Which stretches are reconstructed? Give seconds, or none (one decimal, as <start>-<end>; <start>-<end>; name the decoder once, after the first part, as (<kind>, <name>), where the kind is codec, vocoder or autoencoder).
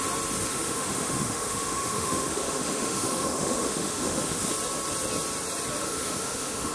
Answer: 0.5-4.5 (autoencoder, DAC-VAE); 5.8-6.7